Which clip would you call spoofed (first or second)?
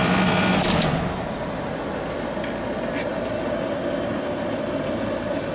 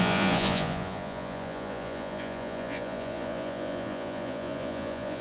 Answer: second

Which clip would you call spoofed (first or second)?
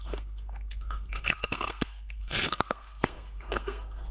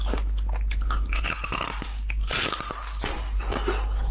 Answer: first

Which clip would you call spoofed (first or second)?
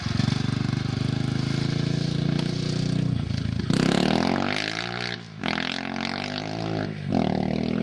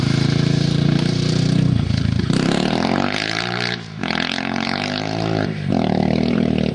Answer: second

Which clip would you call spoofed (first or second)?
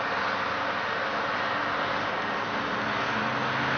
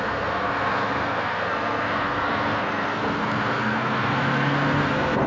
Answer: second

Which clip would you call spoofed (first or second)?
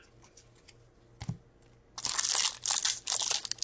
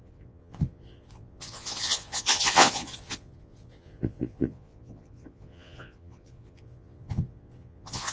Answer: second